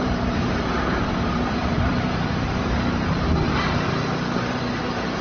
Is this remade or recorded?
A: remade